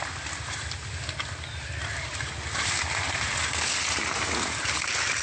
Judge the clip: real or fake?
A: real